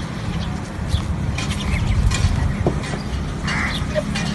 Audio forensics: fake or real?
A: real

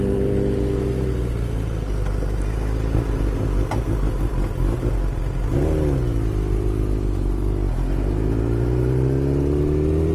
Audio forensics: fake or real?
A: real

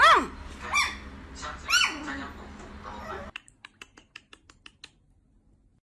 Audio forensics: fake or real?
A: real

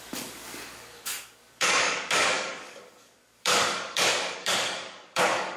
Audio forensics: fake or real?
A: fake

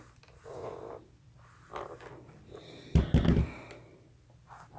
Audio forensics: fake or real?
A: real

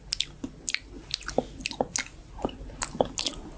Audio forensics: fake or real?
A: real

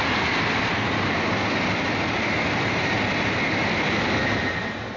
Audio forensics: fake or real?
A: real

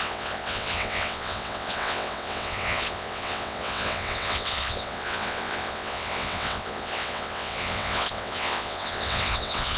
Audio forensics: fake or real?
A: fake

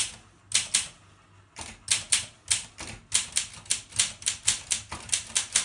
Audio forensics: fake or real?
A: real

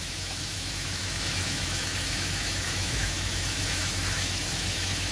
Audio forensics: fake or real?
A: fake